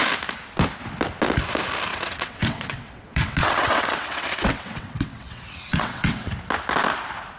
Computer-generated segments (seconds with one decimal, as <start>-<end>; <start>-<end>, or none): 1.9-6.3